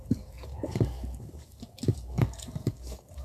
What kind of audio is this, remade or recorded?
remade